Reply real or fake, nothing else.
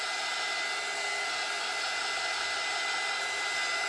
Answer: real